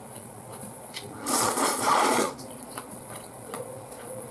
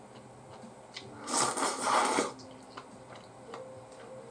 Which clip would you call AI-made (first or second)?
first